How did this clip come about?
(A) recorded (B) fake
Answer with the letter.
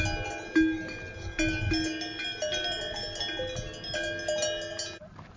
A